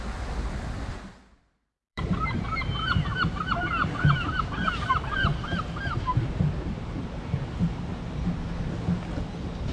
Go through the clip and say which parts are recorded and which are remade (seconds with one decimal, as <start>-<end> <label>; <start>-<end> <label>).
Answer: 0.0-0.9 recorded; 0.9-2.0 remade; 2.0-5.3 recorded; 5.3-7.1 remade; 7.1-9.7 recorded